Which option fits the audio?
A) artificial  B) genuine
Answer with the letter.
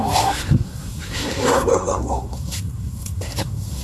A